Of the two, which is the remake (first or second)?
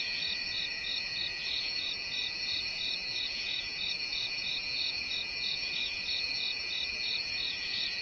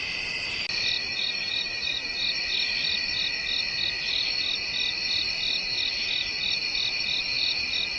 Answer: first